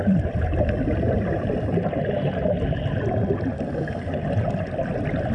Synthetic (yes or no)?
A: no